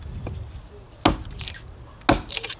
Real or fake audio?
real